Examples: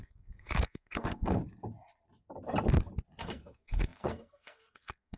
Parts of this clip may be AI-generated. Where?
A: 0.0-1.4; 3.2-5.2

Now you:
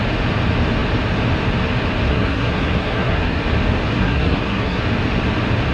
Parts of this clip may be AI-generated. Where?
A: 2.1-3.4; 3.9-4.8

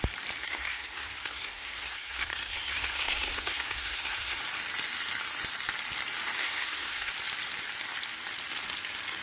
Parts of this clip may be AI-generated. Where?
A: 0.4-4.4; 6.4-7.1

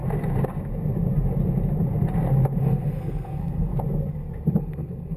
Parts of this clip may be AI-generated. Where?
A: 2.6-3.7; 4.6-5.2

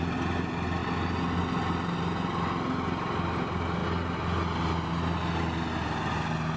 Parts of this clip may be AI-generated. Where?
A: none

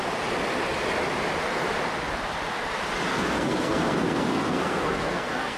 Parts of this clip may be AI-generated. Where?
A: 3.1-5.6